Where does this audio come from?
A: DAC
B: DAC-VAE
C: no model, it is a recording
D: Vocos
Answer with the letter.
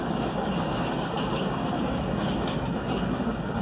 A